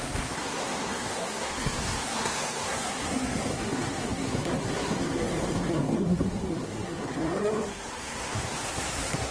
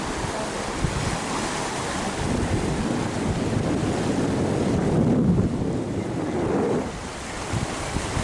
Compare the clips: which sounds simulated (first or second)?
first